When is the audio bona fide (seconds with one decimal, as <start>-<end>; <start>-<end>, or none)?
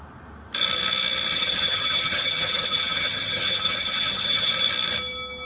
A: 0.0-1.3; 4.5-5.5